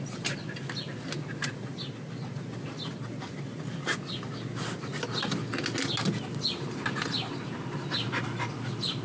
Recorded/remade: recorded